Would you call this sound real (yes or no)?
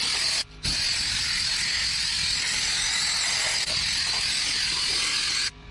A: yes